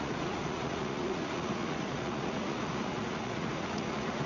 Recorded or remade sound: remade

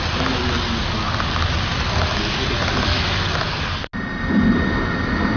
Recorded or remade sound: recorded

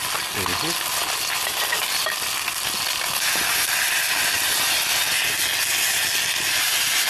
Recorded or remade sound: recorded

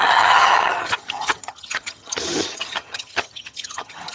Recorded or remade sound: remade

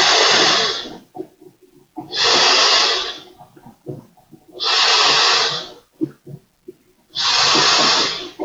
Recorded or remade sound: recorded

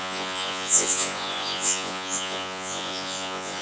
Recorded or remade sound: remade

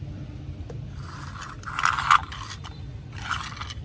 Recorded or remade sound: recorded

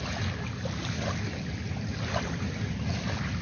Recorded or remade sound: recorded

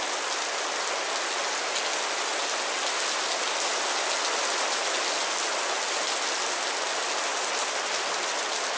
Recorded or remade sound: recorded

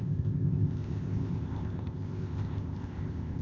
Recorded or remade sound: remade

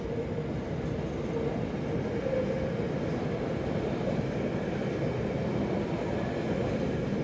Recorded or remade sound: recorded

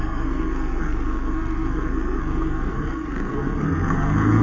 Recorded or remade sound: remade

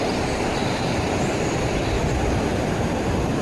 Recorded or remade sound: recorded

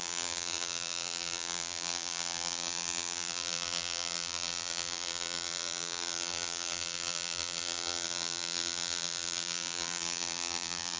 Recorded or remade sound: remade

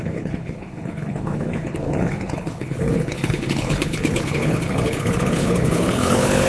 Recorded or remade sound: remade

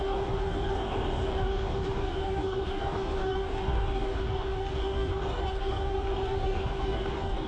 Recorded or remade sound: remade